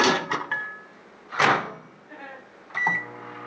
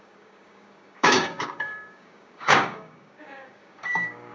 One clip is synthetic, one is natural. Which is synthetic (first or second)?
second